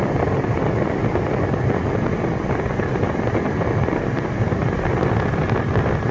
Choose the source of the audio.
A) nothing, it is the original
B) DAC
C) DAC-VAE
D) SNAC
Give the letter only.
A